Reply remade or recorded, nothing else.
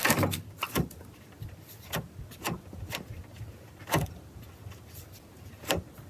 remade